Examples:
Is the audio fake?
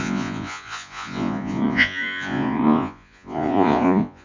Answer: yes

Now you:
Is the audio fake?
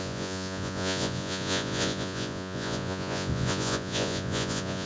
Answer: yes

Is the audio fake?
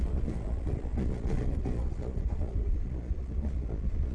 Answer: yes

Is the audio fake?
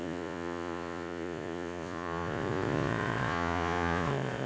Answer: yes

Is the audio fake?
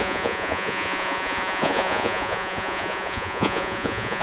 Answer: yes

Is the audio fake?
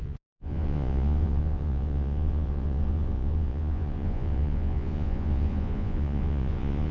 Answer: yes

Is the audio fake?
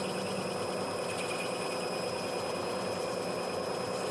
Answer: no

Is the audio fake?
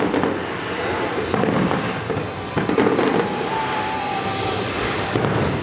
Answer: no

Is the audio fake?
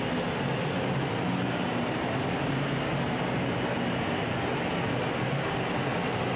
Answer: no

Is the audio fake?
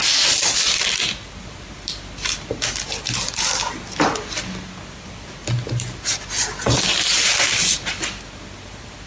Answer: no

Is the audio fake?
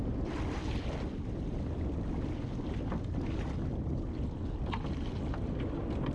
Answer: no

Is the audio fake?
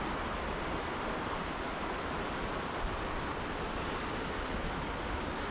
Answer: no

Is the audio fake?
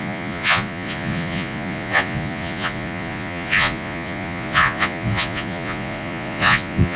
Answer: yes